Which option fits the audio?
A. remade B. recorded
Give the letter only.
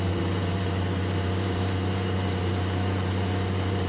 A